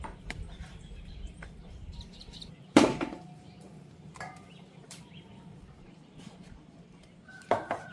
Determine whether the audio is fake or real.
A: fake